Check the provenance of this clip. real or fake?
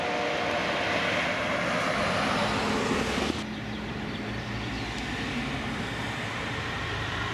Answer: real